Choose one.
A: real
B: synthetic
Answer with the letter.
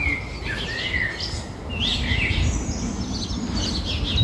A